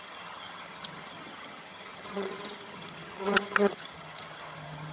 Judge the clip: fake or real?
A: fake